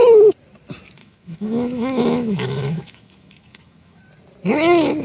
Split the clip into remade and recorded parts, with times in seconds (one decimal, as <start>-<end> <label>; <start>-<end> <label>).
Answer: 0.0-1.0 recorded; 1.0-4.0 remade; 4.0-5.0 recorded